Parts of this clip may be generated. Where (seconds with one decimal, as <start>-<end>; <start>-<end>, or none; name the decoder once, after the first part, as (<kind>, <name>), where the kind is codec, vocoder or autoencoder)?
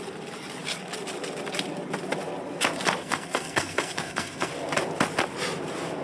3.0-4.5 (codec, SNAC)